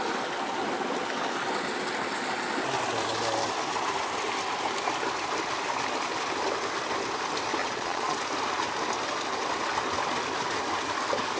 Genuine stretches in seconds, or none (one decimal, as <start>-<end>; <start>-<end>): 0.0-7.6; 8.2-11.4